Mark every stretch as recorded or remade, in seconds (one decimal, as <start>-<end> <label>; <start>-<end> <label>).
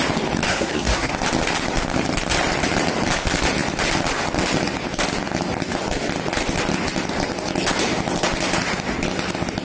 0.0-0.5 recorded; 0.5-1.1 remade; 1.1-9.6 recorded